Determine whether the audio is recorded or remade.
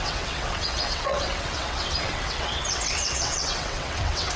remade